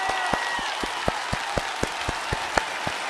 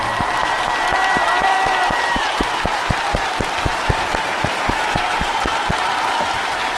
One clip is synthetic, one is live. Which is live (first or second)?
first